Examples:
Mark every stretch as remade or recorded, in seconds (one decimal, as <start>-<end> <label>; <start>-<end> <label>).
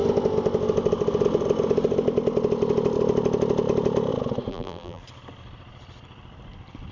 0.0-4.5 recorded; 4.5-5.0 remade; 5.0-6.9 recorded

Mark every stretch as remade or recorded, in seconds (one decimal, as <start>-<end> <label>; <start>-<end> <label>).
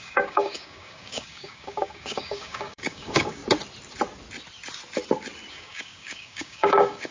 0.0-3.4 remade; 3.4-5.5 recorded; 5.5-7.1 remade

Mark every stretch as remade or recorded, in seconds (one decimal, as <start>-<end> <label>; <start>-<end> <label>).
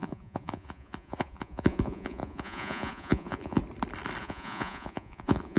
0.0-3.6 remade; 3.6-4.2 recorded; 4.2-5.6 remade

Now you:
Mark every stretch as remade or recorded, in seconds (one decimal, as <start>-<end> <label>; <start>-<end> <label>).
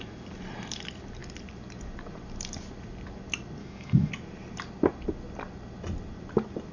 0.0-3.6 recorded; 3.6-4.1 remade; 4.1-6.7 recorded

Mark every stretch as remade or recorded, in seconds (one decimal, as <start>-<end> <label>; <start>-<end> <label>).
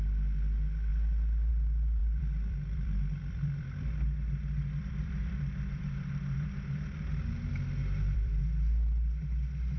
0.0-2.0 recorded; 2.0-7.3 remade; 7.3-7.8 recorded; 7.8-8.4 remade; 8.4-9.8 recorded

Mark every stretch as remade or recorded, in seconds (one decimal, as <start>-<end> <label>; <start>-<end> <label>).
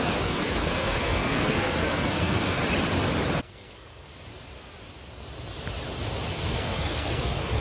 0.0-2.6 remade; 2.6-3.4 recorded; 3.4-4.1 remade; 4.1-6.3 recorded; 6.3-7.6 remade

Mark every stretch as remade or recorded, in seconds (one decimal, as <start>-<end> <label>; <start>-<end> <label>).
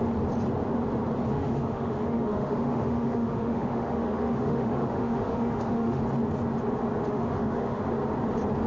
0.0-1.3 recorded; 1.3-6.0 remade; 6.0-7.0 recorded; 7.0-7.8 remade; 7.8-8.7 recorded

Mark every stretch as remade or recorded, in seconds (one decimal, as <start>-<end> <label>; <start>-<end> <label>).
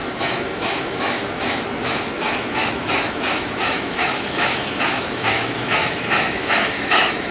0.0-7.3 remade